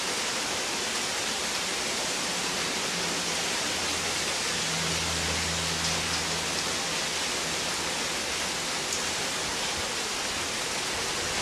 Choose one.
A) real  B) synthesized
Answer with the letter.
A